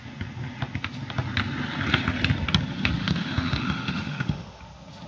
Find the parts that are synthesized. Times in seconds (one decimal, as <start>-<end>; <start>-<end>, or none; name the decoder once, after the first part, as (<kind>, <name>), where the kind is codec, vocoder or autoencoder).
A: 3.0-4.6 (autoencoder, DAC-VAE)